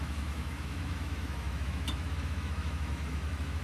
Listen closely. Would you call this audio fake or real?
fake